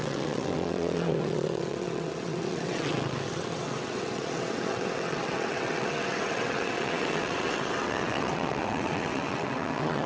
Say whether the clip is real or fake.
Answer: fake